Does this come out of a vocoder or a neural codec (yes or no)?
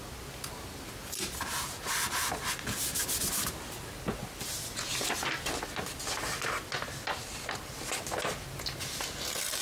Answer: no